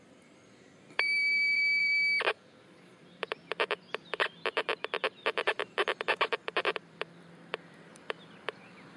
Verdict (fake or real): fake